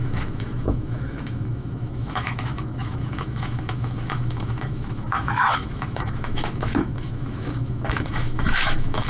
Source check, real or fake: fake